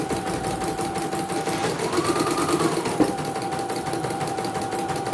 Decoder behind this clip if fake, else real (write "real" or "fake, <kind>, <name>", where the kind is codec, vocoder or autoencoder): real